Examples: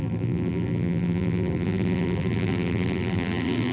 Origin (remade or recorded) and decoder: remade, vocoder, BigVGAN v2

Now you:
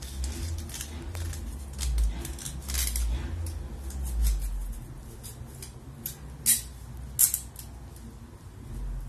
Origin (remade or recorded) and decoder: recorded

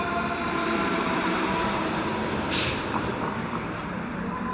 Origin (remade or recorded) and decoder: remade, vocoder, BigVGAN v2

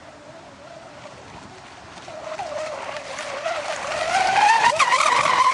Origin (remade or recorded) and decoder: recorded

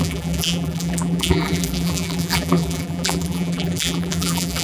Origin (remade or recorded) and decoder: remade, vocoder, BigVGAN v2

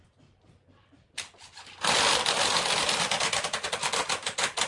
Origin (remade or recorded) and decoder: recorded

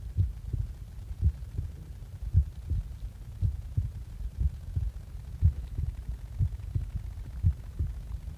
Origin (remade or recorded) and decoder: recorded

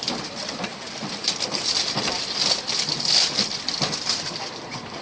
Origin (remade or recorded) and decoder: remade, vocoder, BigVGAN v2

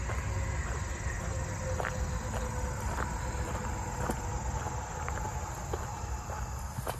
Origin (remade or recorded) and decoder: recorded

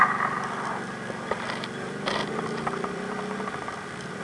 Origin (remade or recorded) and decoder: remade, vocoder, BigVGAN v2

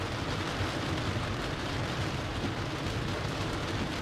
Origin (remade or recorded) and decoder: remade, vocoder, BigVGAN v2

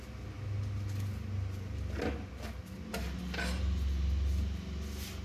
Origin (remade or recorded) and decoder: recorded